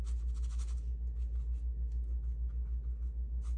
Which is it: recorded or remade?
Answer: recorded